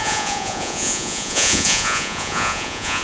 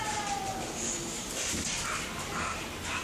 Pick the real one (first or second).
second